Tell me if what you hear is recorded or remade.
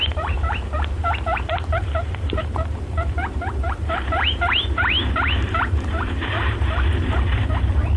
remade